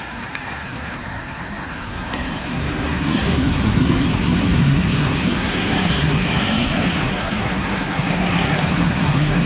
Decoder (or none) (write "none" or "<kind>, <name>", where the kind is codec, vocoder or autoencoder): codec, SNAC